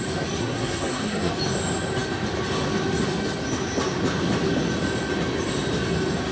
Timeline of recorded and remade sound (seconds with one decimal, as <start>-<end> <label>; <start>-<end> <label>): 0.0-0.4 recorded; 0.4-1.3 remade; 1.3-6.3 recorded